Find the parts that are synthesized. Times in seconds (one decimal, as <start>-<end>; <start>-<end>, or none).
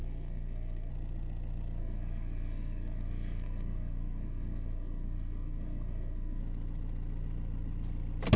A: 0.0-0.9; 1.8-6.4